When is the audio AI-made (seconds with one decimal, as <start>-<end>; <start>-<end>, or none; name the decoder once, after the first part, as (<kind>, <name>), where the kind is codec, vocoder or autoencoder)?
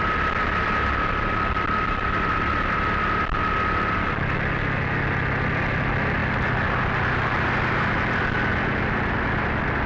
none